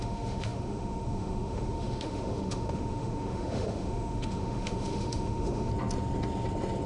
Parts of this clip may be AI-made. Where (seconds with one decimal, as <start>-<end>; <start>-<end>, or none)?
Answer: 0.0-5.7